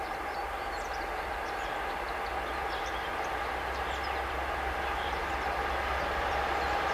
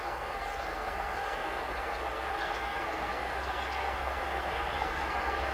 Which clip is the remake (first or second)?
second